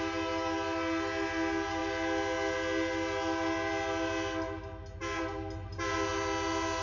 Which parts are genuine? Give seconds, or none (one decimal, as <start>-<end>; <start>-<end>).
0.0-6.8